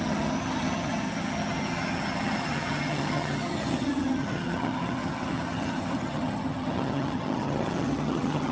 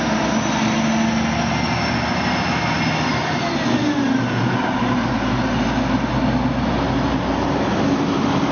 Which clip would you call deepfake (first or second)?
first